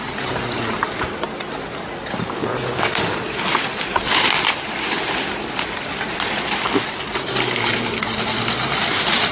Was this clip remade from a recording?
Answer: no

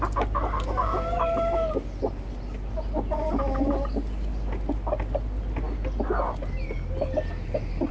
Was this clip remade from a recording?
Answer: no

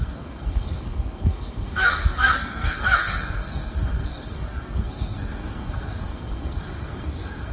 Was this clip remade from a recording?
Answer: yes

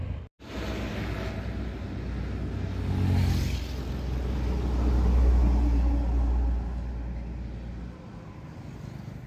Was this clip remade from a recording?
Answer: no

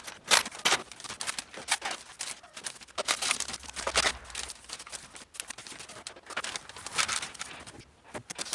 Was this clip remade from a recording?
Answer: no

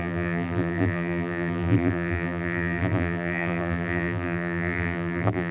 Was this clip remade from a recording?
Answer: yes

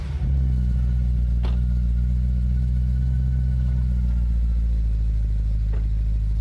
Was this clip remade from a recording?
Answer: no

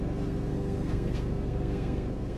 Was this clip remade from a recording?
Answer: yes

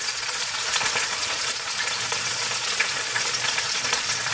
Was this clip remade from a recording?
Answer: yes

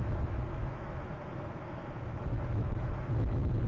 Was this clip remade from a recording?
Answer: yes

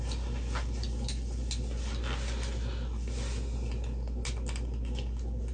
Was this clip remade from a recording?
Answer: no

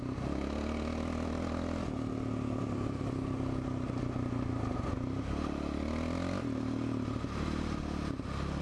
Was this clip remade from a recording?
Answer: no